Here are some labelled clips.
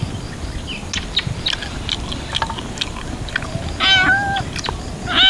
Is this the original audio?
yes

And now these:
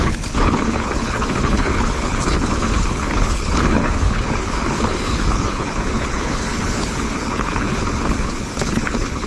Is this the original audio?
no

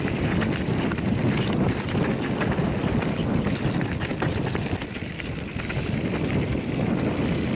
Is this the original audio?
yes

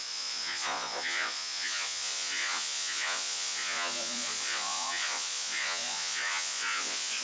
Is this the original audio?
no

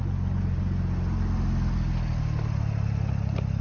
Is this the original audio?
yes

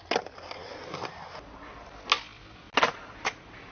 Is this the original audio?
yes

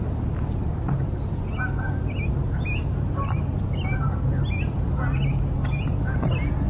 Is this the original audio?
yes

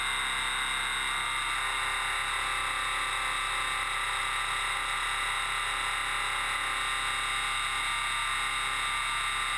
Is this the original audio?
yes